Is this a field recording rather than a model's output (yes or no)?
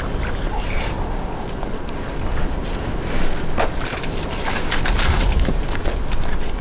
yes